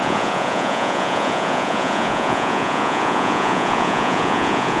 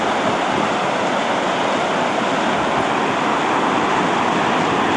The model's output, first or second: first